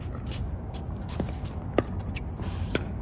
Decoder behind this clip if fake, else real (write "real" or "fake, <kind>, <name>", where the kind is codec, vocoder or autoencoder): real